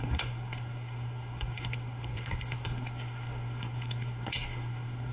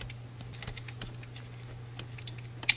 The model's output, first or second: first